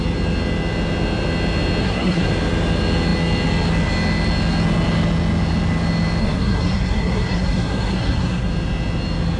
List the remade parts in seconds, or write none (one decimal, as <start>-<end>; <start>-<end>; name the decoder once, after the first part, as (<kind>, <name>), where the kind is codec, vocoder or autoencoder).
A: 1.8-2.3 (codec, SNAC); 6.2-8.5